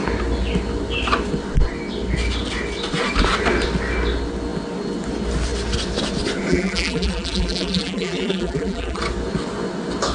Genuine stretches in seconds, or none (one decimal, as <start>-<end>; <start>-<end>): 0.0-6.5; 9.0-10.1